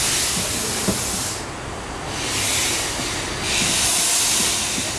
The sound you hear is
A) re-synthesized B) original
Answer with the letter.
B